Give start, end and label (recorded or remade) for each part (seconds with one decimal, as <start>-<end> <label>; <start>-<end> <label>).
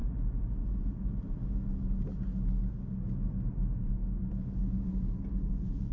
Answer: 0.0-5.9 recorded